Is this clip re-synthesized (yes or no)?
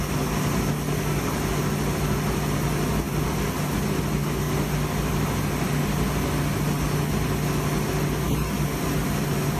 no